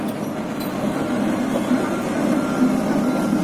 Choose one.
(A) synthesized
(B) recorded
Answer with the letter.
B